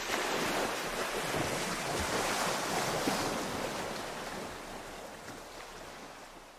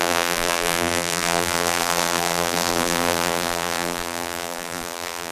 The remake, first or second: second